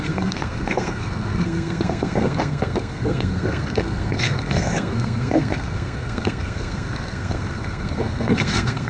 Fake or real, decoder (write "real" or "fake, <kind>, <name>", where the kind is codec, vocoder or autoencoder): fake, codec, SNAC